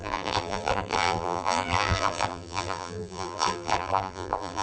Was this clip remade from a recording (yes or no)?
yes